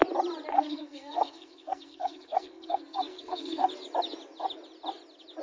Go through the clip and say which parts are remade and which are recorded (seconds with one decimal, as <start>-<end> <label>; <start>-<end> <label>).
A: 0.0-0.5 recorded; 0.5-3.7 remade; 3.7-5.4 recorded